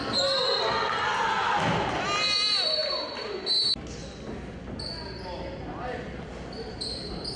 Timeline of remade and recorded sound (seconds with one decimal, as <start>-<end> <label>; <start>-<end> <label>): 0.0-7.4 recorded